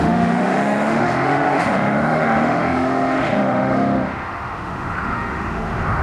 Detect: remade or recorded remade